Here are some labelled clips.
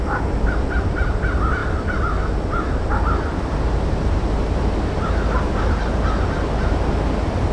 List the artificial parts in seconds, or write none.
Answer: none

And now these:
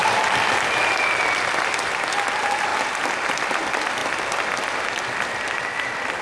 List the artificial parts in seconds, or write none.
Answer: 0.0-0.9 (vocoder, BigVGAN v2)

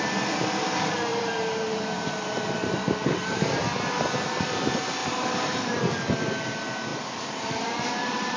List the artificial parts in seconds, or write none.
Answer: 1.1-3.6 (vocoder, BigVGAN v2); 5.0-5.8; 6.9-8.4

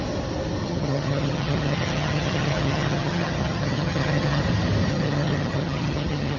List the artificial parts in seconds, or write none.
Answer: 0.6-4.4 (vocoder, HiFi-GAN); 4.9-6.4

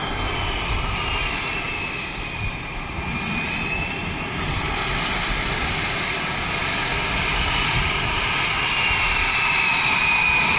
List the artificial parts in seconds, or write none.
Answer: none

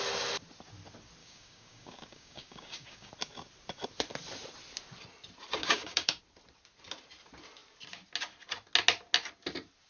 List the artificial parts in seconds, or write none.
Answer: 1.2-3.1 (codec, DAC); 5.6-6.2